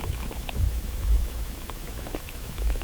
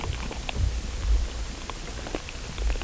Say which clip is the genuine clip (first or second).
second